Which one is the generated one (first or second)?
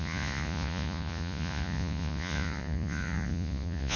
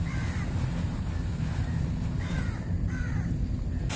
first